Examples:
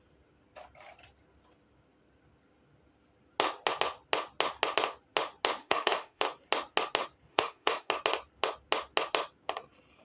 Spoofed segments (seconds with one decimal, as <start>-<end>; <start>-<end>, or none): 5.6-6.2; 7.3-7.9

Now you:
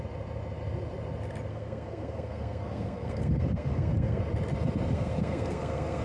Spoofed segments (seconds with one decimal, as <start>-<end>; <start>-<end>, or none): 1.5-4.2; 4.9-6.0

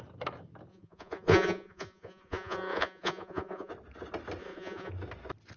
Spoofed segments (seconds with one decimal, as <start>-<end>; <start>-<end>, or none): 0.7-3.7; 4.4-4.9

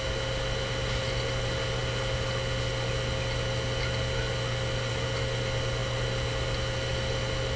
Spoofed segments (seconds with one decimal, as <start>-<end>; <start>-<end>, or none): none

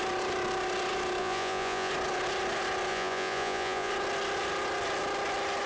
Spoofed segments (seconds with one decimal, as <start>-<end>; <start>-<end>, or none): 1.2-1.9; 2.9-3.9

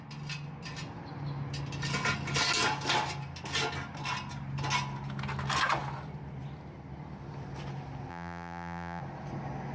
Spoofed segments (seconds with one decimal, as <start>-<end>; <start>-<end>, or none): 8.1-9.0